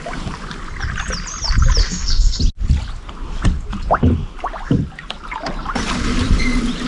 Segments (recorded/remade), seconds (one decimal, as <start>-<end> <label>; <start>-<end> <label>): 0.0-1.8 recorded; 1.8-2.4 remade; 2.4-6.9 recorded

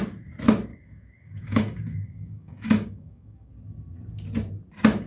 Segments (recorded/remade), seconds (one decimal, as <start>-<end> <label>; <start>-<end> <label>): 0.0-0.7 recorded; 0.7-3.5 remade; 3.5-5.1 recorded

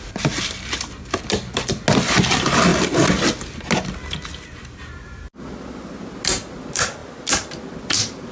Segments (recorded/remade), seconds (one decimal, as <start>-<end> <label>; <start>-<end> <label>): 0.0-8.3 recorded

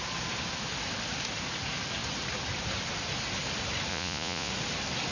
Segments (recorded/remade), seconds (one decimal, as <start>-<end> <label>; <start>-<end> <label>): 0.0-3.9 recorded; 3.9-4.5 remade; 4.5-5.1 recorded

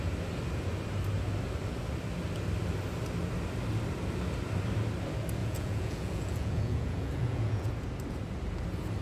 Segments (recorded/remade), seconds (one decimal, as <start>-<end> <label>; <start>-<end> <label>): 0.0-5.4 recorded; 5.4-7.7 remade; 7.7-9.0 recorded

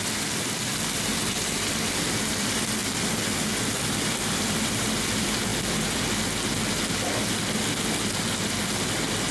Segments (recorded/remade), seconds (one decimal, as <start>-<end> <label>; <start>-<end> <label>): 0.0-2.8 remade; 2.8-3.4 recorded; 3.4-5.5 remade; 5.5-9.3 recorded